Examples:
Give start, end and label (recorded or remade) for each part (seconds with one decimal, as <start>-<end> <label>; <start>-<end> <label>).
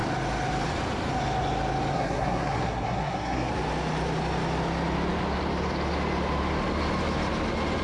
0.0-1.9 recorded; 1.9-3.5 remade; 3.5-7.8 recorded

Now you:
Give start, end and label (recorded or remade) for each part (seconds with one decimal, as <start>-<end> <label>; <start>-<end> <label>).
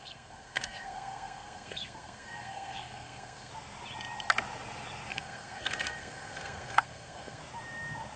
0.0-3.5 remade; 3.5-5.1 recorded; 5.1-7.4 remade; 7.4-8.2 recorded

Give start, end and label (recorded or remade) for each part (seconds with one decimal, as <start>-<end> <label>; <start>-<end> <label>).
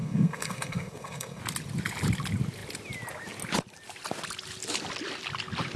0.0-1.4 remade; 1.4-5.8 recorded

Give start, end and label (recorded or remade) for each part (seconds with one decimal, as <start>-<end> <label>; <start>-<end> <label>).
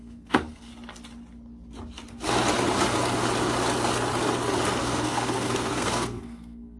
0.0-0.7 remade; 0.7-4.8 recorded; 4.8-6.8 remade